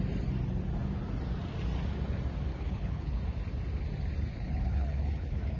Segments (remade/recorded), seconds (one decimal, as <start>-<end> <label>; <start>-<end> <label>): 0.0-2.5 recorded; 2.5-3.2 remade; 3.2-4.3 recorded; 4.3-5.6 remade